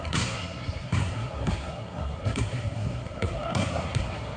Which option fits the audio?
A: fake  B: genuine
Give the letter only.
A